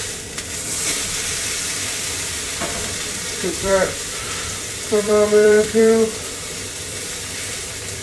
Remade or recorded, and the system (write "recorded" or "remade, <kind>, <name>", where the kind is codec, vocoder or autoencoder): remade, vocoder, BigVGAN v2